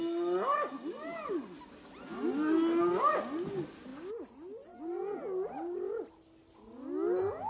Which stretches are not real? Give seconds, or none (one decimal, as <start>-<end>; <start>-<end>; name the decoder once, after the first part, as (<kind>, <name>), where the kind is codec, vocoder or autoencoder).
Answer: none